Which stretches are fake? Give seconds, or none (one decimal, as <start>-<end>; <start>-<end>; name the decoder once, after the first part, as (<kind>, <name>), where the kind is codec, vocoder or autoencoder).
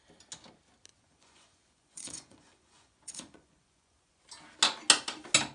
0.9-4.2 (vocoder, Vocos)